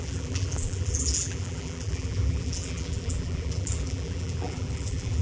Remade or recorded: remade